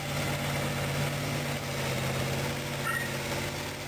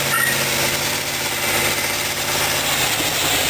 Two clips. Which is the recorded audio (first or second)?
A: second